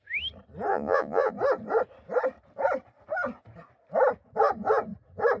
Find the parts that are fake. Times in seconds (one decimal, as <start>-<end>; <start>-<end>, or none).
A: 0.7-1.3